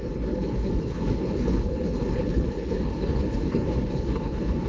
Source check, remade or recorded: remade